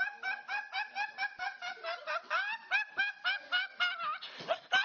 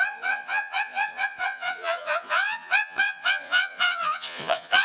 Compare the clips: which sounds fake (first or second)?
second